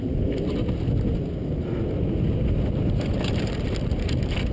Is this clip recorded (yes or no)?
yes